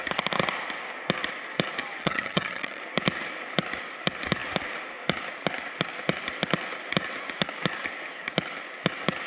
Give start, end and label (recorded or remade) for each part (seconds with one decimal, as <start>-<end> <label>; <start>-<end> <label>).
0.0-2.0 recorded; 2.0-2.8 remade; 2.8-9.3 recorded